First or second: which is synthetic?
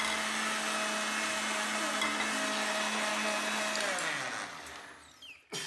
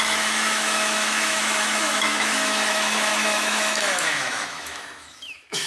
second